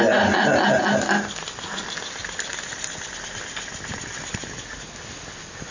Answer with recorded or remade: recorded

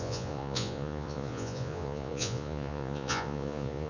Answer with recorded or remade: remade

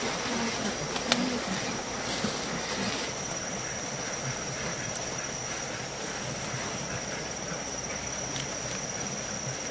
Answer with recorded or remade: recorded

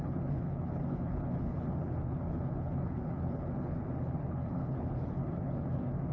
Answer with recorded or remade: remade